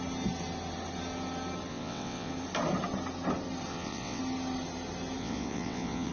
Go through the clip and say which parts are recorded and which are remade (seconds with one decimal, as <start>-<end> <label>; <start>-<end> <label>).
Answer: 0.0-1.7 recorded; 1.7-2.3 remade; 2.3-3.7 recorded; 3.7-4.2 remade; 4.2-5.2 recorded; 5.2-6.1 remade